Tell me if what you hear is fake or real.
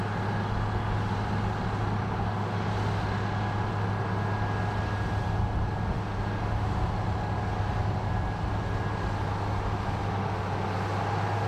real